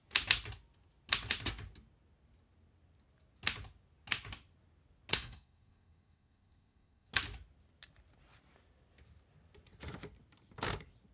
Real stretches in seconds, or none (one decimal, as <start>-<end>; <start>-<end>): 0.0-5.1; 7.1-11.1